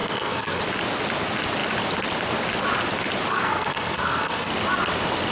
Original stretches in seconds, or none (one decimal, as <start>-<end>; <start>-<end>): 0.6-3.3; 4.5-5.3